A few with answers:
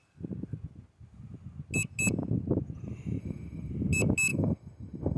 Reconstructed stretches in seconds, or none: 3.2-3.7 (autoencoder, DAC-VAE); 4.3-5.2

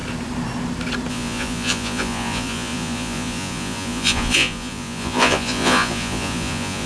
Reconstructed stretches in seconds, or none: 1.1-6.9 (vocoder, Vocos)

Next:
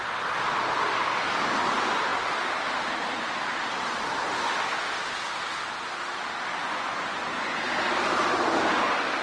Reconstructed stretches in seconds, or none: 6.6-7.6 (vocoder, Vocos)

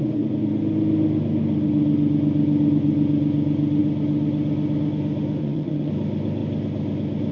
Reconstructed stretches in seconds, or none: 5.4-5.9 (vocoder, HiFi-GAN)

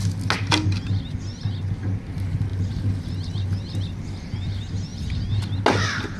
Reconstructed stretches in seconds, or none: none

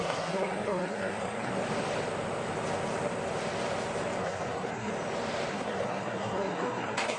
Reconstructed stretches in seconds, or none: 0.0-1.5 (codec, SNAC); 4.2-4.9; 5.5-7.2

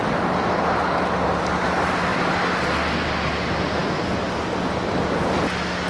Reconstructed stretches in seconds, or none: none